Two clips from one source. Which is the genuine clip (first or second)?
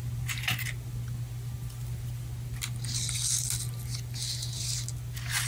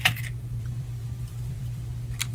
first